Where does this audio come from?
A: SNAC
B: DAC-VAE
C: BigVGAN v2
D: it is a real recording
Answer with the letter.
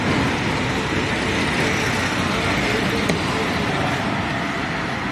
D